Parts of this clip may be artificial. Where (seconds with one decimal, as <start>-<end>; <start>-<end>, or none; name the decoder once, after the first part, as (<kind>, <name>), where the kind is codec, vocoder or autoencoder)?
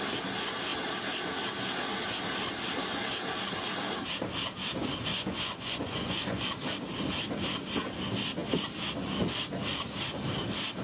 5.1-6.5 (vocoder, Vocos)